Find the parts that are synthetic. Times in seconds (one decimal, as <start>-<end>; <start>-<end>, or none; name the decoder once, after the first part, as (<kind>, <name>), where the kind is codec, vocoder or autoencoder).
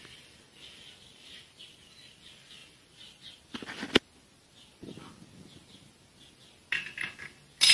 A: none